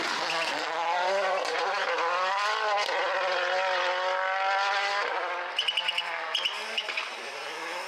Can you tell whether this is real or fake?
real